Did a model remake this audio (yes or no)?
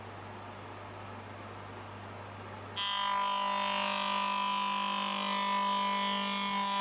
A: no